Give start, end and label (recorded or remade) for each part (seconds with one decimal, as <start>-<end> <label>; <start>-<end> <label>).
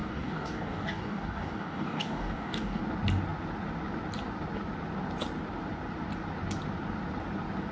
0.0-2.8 remade; 2.8-7.7 recorded